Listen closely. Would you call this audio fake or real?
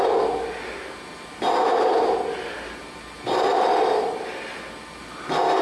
real